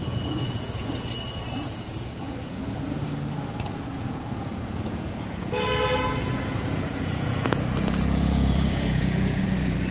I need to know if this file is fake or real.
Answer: fake